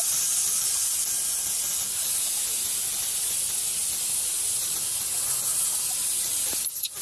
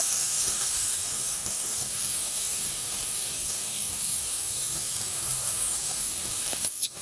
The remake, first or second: second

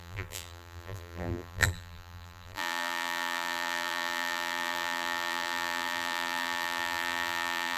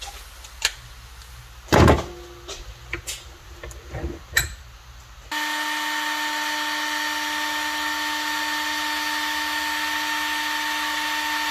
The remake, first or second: first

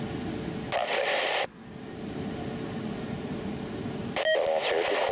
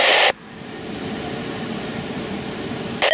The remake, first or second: second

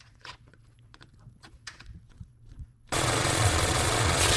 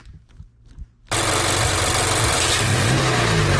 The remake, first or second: first